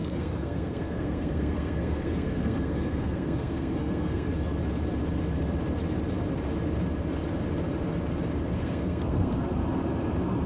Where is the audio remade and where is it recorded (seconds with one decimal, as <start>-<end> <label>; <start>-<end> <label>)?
0.0-4.3 remade; 4.3-8.6 recorded; 8.6-9.4 remade; 9.4-10.5 recorded